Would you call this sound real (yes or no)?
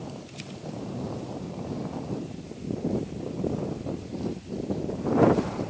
yes